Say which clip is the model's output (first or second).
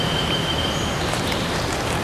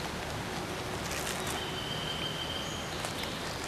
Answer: first